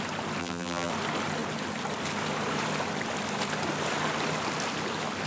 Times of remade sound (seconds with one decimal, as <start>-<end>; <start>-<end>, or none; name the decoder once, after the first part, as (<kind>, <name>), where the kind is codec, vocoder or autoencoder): 0.4-0.9 (vocoder, BigVGAN v2)

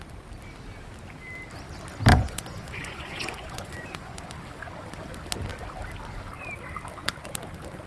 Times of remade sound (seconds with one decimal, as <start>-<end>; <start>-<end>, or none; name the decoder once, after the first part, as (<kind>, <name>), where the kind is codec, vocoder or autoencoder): 2.1-4.2 (vocoder, Vocos)